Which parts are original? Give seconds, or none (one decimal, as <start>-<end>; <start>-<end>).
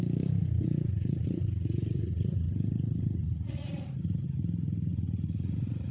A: 0.0-0.4; 3.9-4.9